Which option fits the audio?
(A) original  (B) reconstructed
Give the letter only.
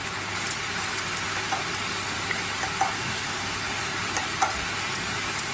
A